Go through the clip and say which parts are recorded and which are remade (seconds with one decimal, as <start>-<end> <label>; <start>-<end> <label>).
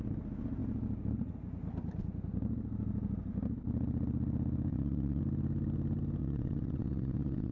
0.0-4.7 recorded; 4.7-5.2 remade; 5.2-6.2 recorded; 6.2-7.5 remade